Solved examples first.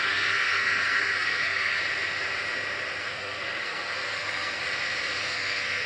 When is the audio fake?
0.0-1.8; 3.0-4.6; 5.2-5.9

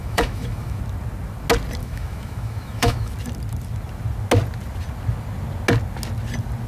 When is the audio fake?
0.0-0.8; 1.8-3.1

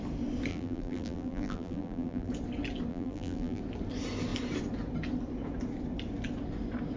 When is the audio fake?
0.5-2.3; 2.9-3.6

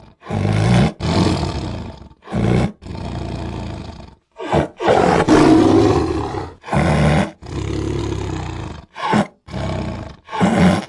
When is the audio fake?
none

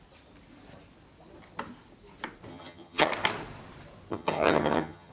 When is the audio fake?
2.5-3.1; 4.1-5.1

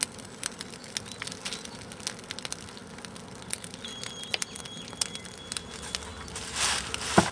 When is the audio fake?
none

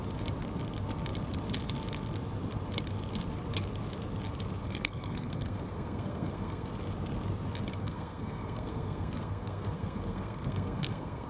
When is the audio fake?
4.6-6.7; 7.8-11.3

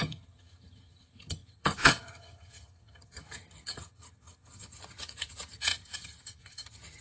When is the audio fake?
0.0-7.0